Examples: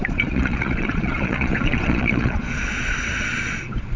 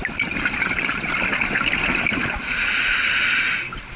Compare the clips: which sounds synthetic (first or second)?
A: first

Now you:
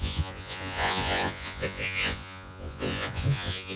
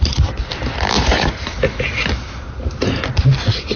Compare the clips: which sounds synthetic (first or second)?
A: first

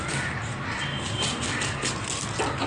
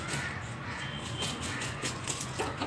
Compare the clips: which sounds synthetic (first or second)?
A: second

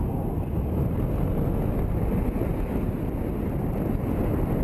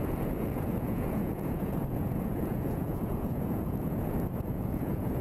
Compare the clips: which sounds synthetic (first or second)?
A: second